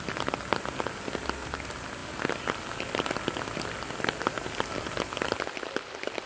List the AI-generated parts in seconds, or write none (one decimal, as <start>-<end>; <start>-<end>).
none